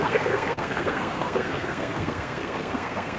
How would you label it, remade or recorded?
remade